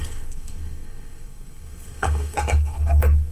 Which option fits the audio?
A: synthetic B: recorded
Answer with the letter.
A